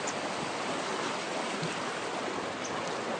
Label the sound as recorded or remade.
recorded